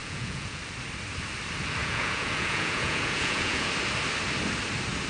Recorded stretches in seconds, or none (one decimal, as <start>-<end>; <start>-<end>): 0.6-1.8; 3.7-5.1